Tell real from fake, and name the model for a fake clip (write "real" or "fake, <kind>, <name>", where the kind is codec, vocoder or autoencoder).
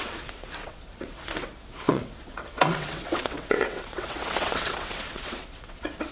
fake, vocoder, WaveNeXt